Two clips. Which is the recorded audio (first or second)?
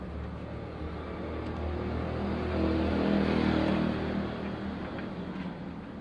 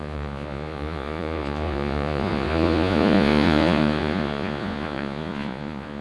first